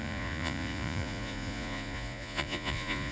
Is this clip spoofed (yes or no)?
yes